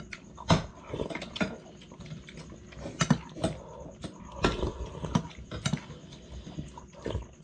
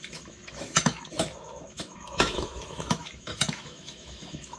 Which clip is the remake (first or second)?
second